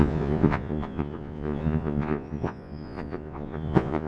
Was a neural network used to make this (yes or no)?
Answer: yes